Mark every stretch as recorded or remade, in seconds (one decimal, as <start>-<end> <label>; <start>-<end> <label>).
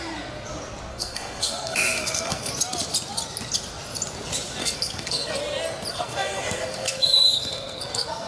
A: 0.0-0.9 recorded; 0.9-2.5 remade; 2.5-4.6 recorded; 4.6-5.4 remade; 5.4-5.9 recorded; 5.9-8.3 remade